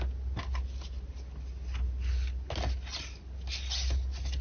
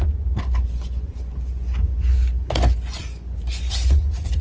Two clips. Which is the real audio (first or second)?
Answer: first